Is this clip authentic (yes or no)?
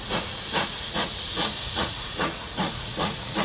no